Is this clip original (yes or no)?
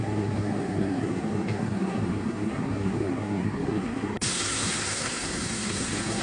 no